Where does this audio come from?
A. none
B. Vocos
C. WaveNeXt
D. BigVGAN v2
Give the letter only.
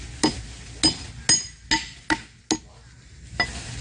A